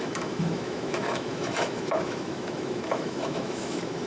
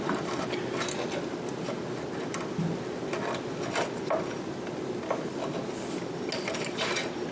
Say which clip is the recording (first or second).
second